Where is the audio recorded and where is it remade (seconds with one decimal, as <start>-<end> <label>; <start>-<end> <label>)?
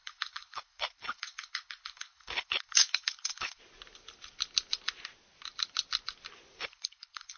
0.0-3.6 remade; 3.6-6.6 recorded; 6.6-7.4 remade